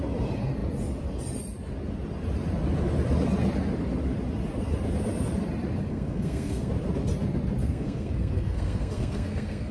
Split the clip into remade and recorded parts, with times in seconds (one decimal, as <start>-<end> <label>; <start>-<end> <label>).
0.0-5.9 recorded; 5.9-6.7 remade; 6.7-7.6 recorded; 7.6-9.7 remade